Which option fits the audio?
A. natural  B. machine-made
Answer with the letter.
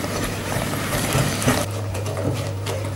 B